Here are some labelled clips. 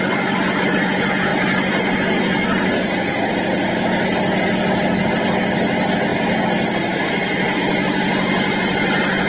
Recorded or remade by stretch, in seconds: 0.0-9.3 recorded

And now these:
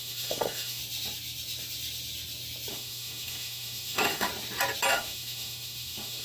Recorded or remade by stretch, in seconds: 0.0-0.8 remade; 0.8-2.7 recorded; 2.7-4.3 remade; 4.3-4.9 recorded; 4.9-6.2 remade

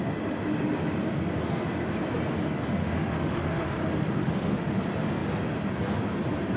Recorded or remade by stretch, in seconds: 0.0-2.8 recorded; 2.8-3.8 remade; 3.8-4.2 recorded; 4.2-4.8 remade; 4.8-6.6 recorded

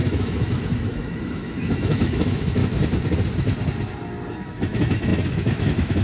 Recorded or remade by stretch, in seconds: 0.0-2.6 remade; 2.6-4.4 recorded; 4.4-6.0 remade

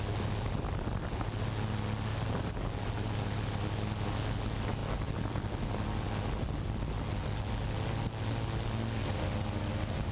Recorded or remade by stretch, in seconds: 0.0-10.1 recorded